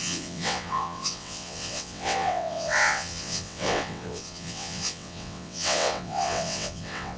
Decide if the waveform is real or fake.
fake